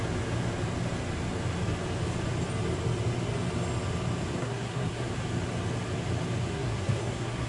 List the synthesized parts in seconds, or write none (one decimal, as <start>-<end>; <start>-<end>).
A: 4.4-5.1; 6.5-7.5